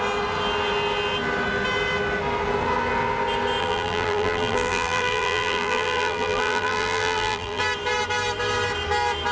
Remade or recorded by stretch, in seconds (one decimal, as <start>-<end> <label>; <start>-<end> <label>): 0.0-3.6 recorded; 3.6-7.6 remade; 7.6-9.3 recorded